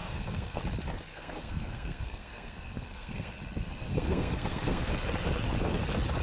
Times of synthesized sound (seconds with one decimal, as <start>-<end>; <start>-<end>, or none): 0.0-0.6; 1.1-3.3; 3.9-4.9